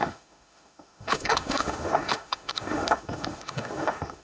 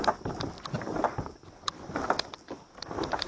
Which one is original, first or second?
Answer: second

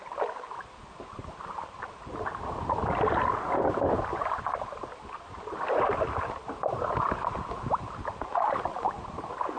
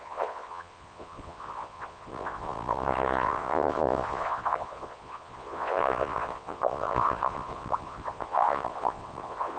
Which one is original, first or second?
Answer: first